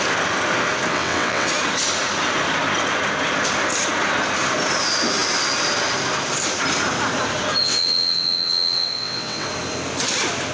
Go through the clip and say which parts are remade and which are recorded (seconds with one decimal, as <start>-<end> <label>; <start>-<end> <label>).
0.0-0.9 recorded; 0.9-1.5 remade; 1.5-7.6 recorded; 7.6-9.5 remade; 9.5-10.5 recorded